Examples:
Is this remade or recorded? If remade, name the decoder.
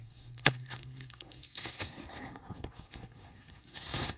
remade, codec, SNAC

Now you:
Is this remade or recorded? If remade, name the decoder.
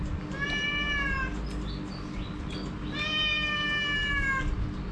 recorded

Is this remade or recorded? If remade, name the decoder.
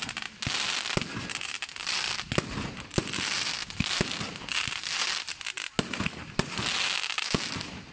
recorded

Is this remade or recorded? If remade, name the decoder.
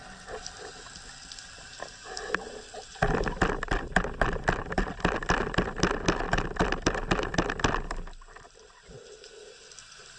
recorded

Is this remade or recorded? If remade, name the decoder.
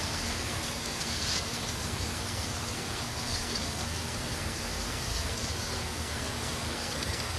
remade, codec, SNAC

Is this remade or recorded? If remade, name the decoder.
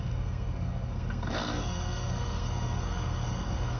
remade, codec, SNAC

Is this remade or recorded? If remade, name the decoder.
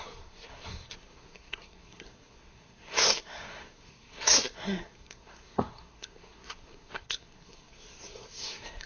remade, codec, SNAC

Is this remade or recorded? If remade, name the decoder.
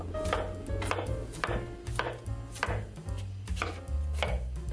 recorded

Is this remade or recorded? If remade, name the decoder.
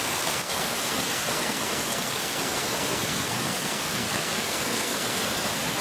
remade, codec, SNAC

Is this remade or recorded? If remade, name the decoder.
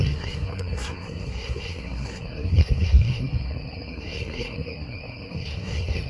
remade, codec, SNAC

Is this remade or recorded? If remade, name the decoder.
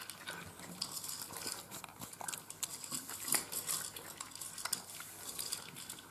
recorded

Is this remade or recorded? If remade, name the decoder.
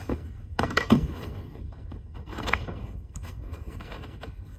remade, codec, SNAC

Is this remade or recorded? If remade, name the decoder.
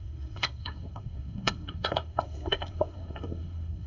remade, codec, SNAC